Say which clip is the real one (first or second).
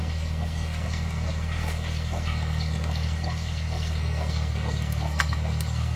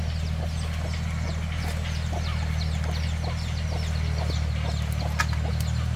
second